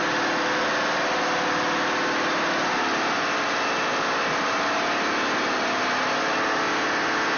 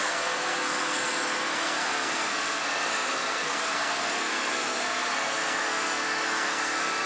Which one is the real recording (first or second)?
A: first